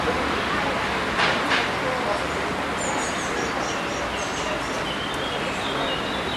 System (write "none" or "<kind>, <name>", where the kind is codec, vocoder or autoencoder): none